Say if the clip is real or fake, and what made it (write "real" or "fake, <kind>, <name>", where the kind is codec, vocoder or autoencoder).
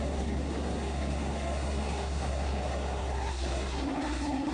fake, codec, SNAC